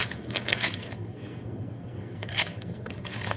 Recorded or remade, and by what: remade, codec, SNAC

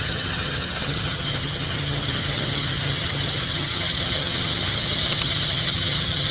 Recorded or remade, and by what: remade, vocoder, HiFi-GAN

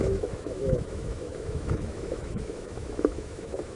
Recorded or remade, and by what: remade, autoencoder, DAC-VAE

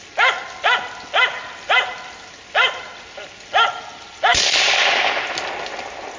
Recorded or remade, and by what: recorded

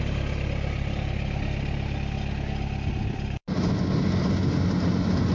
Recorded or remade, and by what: recorded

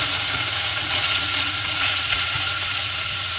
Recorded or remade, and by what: remade, vocoder, Vocos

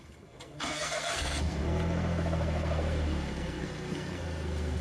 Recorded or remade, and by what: remade, codec, SNAC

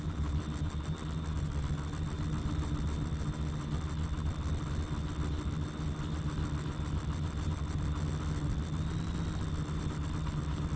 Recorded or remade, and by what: recorded